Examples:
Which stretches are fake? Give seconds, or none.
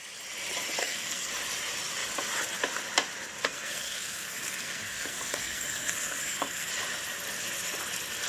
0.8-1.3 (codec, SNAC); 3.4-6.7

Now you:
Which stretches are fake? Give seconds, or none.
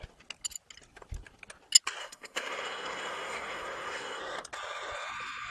2.0-4.2 (codec, SNAC)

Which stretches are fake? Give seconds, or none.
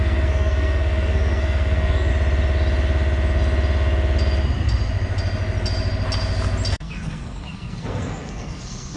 0.0-2.1 (codec, SNAC); 6.7-9.0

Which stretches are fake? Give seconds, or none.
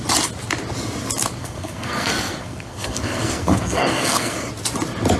1.4-4.5 (codec, SNAC)